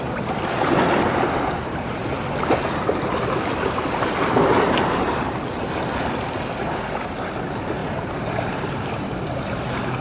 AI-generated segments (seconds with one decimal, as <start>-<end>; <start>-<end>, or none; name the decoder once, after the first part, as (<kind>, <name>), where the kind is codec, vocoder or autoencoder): 7.8-8.8 (vocoder, BigVGAN v2)